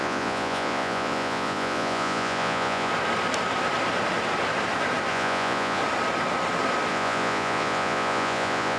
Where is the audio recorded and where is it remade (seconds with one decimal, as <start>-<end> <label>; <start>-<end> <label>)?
0.0-2.9 remade; 2.9-5.1 recorded; 5.1-5.8 remade; 5.8-6.9 recorded; 6.9-8.8 remade